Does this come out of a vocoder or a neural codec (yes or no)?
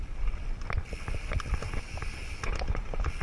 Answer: no